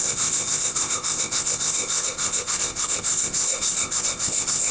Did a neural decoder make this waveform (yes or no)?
yes